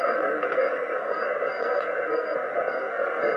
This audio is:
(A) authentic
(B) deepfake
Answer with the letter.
B